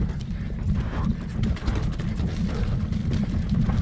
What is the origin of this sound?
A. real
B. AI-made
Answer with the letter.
A